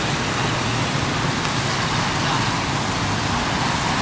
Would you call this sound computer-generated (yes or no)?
no